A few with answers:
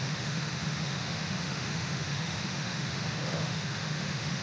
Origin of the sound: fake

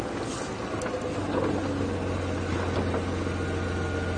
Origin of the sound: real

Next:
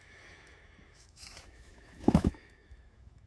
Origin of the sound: fake